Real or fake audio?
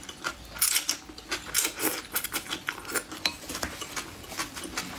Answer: real